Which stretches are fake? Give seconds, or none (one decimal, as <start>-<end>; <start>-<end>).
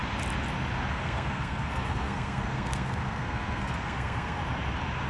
0.9-4.4